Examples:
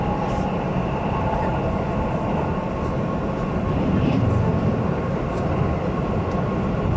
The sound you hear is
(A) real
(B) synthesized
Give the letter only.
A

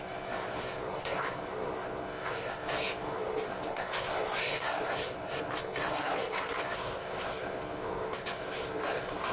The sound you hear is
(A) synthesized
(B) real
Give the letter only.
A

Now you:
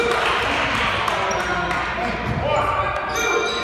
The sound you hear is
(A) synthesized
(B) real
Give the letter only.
B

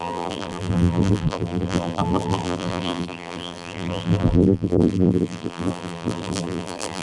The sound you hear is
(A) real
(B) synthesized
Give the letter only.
B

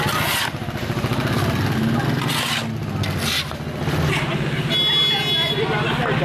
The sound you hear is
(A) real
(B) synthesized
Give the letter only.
A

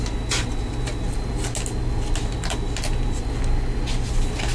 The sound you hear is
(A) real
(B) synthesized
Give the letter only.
A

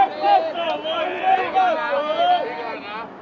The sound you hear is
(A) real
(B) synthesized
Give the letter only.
A